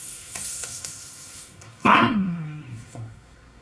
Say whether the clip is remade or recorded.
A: remade